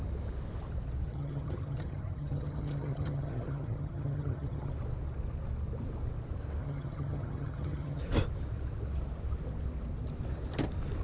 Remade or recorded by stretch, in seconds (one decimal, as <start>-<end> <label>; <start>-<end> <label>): 0.0-1.1 recorded; 1.1-4.7 remade; 4.7-6.6 recorded; 6.6-8.0 remade; 8.0-11.0 recorded